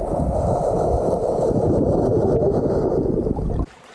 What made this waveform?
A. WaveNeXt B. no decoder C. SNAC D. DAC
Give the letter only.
B